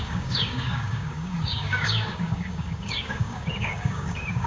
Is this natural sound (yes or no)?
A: no